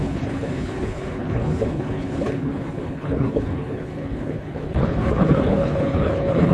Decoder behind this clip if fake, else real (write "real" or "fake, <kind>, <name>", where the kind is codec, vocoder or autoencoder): fake, codec, HILCodec